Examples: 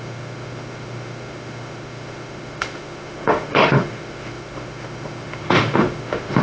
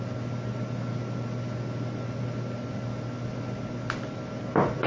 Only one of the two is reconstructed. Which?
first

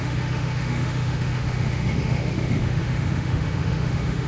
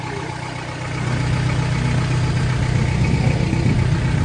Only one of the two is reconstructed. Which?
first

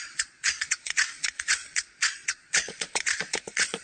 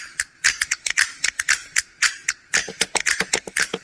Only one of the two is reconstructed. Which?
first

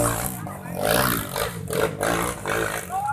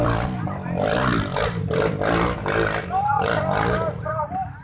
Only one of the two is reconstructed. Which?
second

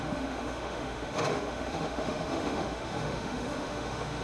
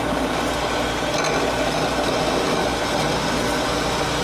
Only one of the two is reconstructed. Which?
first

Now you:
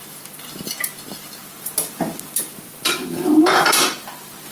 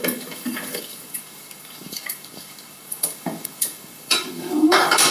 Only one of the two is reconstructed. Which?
second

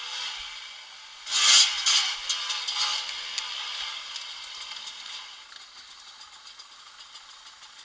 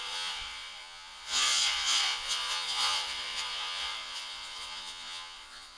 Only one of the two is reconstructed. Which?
second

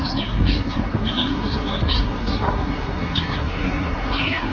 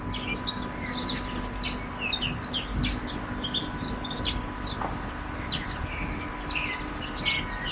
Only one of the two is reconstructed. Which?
first